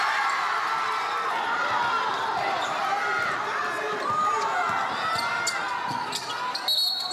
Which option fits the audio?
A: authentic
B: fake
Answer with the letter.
A